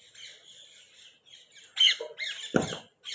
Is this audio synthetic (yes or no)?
no